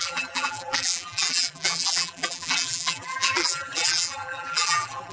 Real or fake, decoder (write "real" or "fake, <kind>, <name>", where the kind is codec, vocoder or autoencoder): fake, vocoder, BigVGAN v2